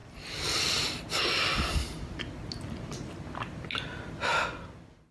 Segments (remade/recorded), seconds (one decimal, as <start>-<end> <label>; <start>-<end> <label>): 0.0-5.1 recorded